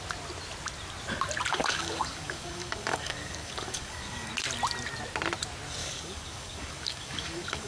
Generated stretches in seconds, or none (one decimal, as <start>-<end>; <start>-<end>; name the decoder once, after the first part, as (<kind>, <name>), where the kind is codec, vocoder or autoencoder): 1.5-4.3 (codec, DAC); 5.8-7.7